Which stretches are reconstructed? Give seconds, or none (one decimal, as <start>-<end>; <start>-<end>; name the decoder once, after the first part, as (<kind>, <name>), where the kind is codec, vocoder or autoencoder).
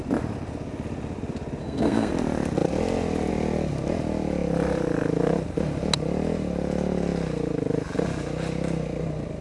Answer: 1.6-2.1 (codec, SNAC)